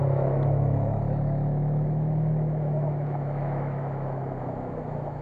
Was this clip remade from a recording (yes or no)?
yes